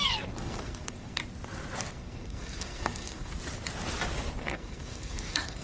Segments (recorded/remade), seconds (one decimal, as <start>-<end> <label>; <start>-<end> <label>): 0.0-1.2 remade; 1.2-1.9 recorded; 1.9-3.3 remade; 3.3-4.4 recorded; 4.4-5.6 remade

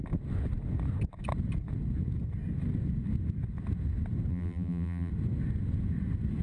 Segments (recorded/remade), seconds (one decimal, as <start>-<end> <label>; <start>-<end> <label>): 0.0-4.3 recorded; 4.3-5.1 remade; 5.1-6.4 recorded

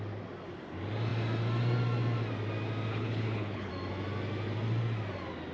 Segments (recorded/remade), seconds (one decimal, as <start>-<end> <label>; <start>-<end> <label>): 0.0-2.9 recorded; 2.9-3.7 remade; 3.7-5.5 recorded

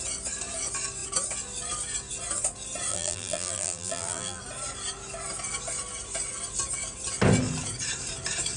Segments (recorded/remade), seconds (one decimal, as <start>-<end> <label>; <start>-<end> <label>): 0.0-2.9 recorded; 2.9-4.4 remade; 4.4-8.6 recorded

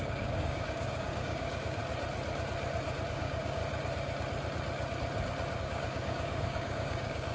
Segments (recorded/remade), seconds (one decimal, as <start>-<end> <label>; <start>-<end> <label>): 0.0-1.8 remade; 1.8-3.1 recorded; 3.1-3.6 remade; 3.6-5.6 recorded; 5.6-7.3 remade

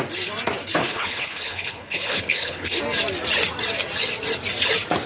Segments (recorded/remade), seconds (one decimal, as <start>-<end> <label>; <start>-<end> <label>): 0.0-0.8 recorded; 0.8-2.8 remade; 2.8-5.1 recorded

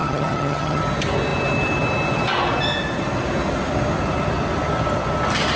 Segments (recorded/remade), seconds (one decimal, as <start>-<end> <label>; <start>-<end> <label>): 0.0-0.8 remade; 0.8-5.6 recorded